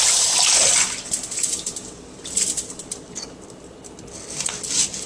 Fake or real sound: real